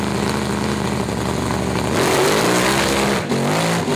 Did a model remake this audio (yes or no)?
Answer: no